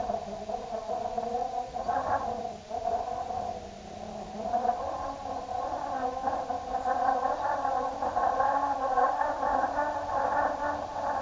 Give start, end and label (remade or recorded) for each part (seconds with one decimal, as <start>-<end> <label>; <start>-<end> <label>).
0.0-1.4 recorded; 1.4-2.0 remade; 2.0-11.2 recorded

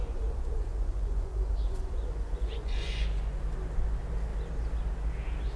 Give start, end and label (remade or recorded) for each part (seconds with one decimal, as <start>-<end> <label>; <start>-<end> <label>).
0.0-3.4 remade; 3.4-5.6 recorded